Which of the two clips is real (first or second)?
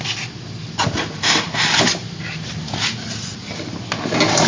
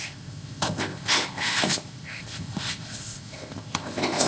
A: first